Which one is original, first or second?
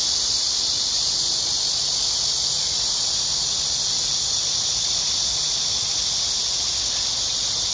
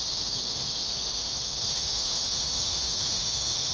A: first